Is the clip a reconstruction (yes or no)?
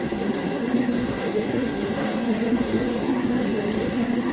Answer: yes